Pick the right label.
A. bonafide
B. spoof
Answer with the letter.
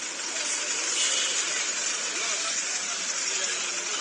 A